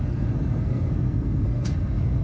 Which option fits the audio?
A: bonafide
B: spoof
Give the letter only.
B